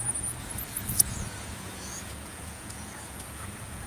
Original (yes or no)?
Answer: no